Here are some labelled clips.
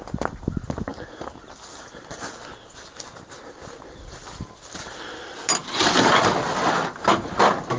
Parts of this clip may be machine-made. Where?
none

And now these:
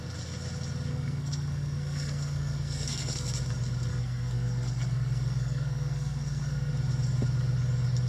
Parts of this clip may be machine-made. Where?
0.9-3.4 (codec, SNAC); 3.9-6.7